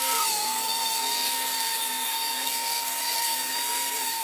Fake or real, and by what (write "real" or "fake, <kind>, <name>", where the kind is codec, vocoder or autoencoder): fake, codec, SNAC